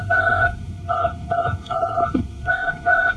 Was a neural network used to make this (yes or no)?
yes